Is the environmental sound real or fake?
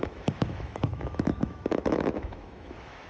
fake